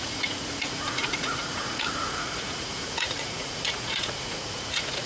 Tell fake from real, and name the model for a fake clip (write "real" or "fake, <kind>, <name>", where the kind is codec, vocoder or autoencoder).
fake, vocoder, Vocos